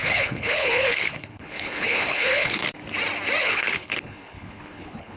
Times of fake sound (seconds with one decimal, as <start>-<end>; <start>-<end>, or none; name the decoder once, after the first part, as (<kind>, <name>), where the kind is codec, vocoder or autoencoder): 0.0-2.6 (codec, HILCodec); 3.4-5.2